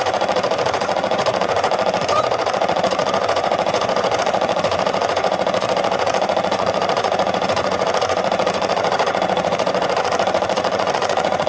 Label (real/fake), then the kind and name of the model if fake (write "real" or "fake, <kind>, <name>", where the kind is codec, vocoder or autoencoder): fake, vocoder, Vocos